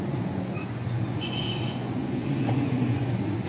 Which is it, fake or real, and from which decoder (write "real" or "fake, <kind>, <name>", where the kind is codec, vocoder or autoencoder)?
fake, vocoder, Vocos